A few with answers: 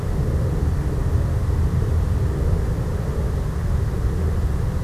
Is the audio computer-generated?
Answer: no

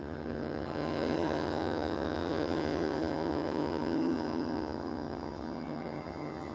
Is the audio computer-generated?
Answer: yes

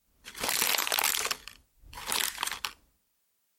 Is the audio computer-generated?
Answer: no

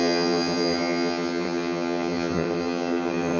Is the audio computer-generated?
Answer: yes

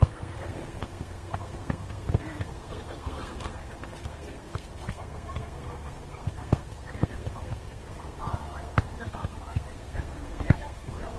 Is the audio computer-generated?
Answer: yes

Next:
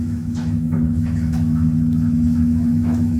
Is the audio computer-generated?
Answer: yes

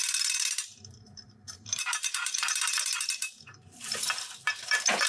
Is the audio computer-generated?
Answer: yes